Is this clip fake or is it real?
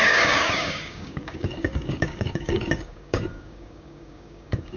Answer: fake